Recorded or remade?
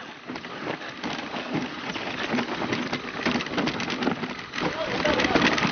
recorded